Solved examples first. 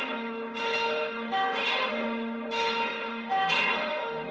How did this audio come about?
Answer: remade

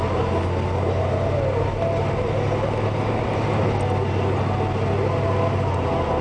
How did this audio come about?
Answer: recorded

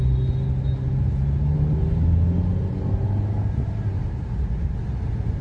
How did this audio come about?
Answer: recorded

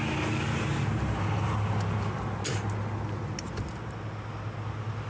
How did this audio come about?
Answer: recorded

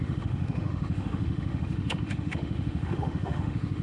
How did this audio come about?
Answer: remade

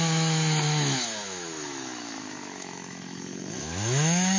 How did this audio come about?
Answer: remade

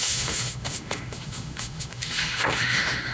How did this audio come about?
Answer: remade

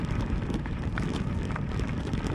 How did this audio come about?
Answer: recorded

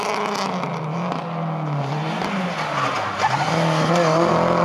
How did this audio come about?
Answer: recorded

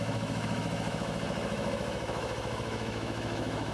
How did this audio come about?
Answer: remade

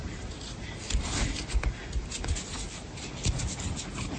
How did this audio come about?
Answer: recorded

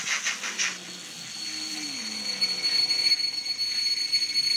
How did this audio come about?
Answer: recorded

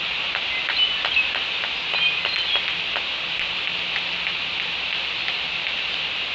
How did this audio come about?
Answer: recorded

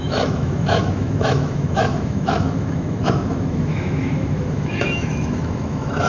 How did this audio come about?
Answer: remade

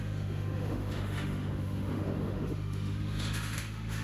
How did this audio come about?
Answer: remade